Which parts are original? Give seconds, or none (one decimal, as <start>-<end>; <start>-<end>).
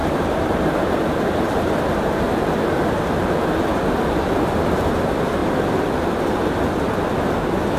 1.7-7.8